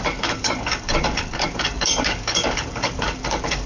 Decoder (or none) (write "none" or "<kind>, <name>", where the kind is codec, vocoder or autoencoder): codec, DAC